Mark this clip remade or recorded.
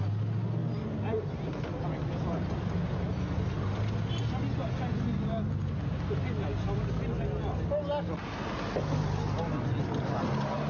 recorded